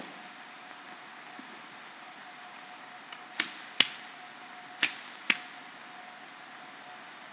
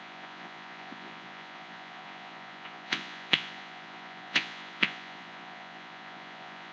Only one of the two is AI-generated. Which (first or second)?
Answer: second